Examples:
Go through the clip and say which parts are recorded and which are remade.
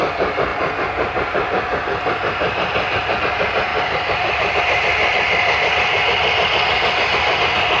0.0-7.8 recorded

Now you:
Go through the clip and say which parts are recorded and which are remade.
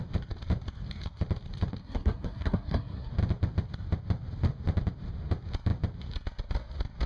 0.0-1.8 recorded; 1.8-3.1 remade; 3.1-7.1 recorded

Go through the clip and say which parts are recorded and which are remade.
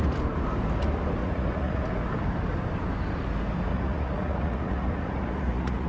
0.0-1.2 recorded; 1.2-1.8 remade; 1.8-3.7 recorded; 3.7-5.9 remade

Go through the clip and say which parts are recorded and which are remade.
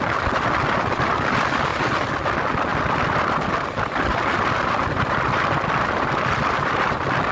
0.0-1.7 recorded; 1.7-2.2 remade; 2.2-2.7 recorded; 2.7-7.3 remade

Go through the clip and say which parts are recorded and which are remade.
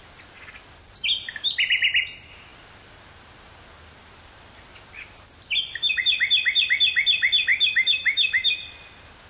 0.0-7.5 recorded; 7.5-8.6 remade; 8.6-9.3 recorded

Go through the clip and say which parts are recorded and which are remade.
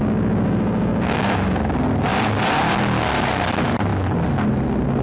0.0-1.6 remade; 1.6-5.0 recorded